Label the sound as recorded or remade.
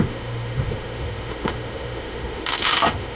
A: remade